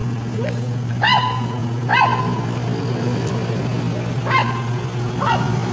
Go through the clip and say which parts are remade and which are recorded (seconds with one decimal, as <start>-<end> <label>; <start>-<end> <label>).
0.0-5.7 recorded